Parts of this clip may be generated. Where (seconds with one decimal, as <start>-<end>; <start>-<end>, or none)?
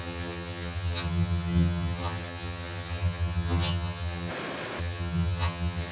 0.0-4.3; 4.8-5.9